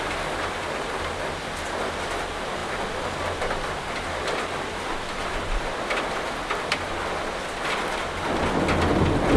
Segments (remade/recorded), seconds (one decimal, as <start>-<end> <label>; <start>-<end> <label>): 0.0-9.4 recorded